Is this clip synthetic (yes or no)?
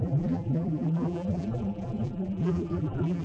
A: yes